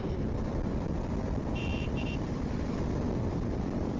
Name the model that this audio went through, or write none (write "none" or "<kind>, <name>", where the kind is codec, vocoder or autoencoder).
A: vocoder, BigVGAN v2